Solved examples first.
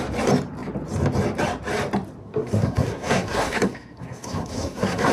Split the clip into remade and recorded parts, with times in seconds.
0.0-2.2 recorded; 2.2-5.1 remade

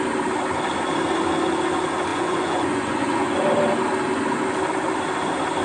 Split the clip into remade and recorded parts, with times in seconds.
0.0-2.1 recorded; 2.1-3.4 remade; 3.4-5.6 recorded

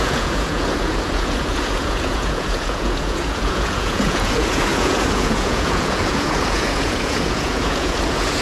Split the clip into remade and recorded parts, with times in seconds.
0.0-8.4 remade

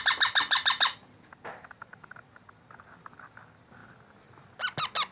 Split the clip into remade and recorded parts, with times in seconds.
0.0-5.1 recorded

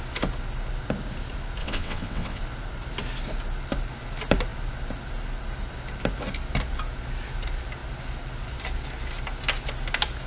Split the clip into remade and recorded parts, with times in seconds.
0.0-1.6 recorded; 1.6-2.4 remade; 2.4-10.3 recorded